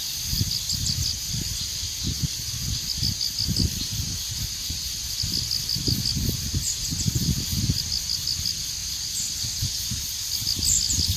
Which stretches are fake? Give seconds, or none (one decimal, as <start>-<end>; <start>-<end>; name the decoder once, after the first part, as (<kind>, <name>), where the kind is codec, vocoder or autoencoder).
none